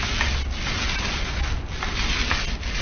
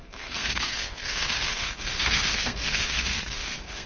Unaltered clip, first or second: first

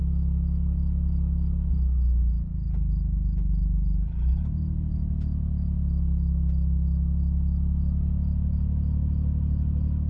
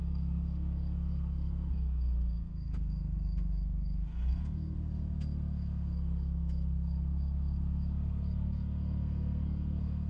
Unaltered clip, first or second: first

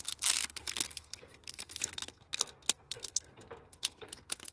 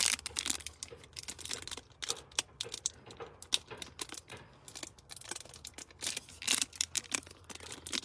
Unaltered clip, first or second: second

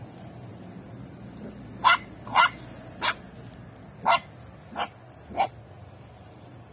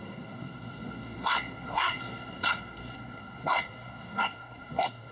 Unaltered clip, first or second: first